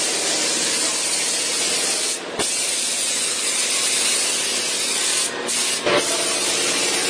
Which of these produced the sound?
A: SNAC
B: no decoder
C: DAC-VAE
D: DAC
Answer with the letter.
B